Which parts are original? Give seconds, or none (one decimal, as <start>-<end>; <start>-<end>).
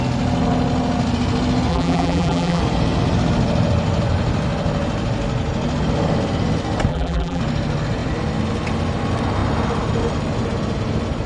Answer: 0.0-1.7; 2.6-6.9; 7.4-11.3